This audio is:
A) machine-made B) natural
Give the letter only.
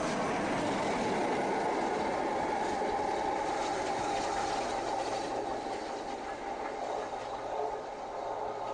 B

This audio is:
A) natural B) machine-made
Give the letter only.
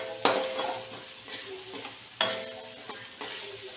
A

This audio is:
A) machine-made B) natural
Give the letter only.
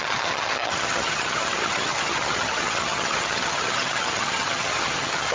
A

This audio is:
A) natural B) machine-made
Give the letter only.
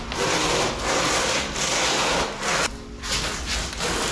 A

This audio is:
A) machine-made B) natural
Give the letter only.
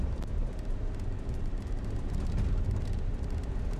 B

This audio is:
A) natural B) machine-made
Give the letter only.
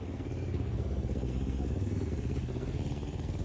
B